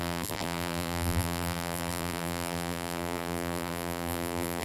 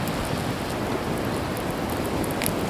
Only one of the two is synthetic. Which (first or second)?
first